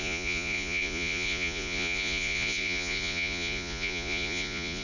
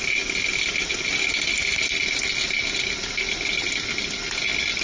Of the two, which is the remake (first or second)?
first